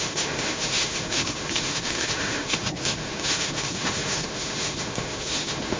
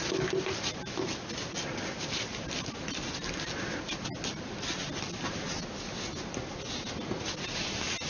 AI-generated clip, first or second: first